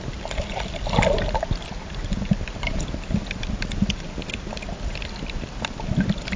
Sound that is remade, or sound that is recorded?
recorded